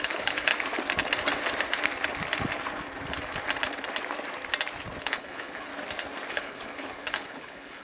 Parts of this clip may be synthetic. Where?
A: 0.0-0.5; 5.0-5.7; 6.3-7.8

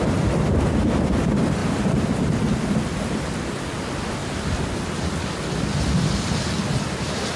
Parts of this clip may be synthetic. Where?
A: none